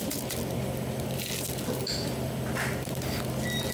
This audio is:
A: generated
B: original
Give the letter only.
B